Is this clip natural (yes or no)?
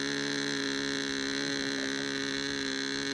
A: yes